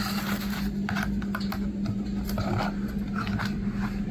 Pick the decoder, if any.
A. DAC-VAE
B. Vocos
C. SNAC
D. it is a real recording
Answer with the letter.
D